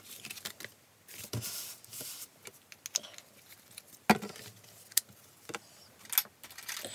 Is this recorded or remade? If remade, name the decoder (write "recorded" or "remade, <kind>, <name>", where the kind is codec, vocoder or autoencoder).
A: recorded